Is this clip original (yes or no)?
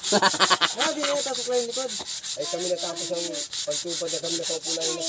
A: yes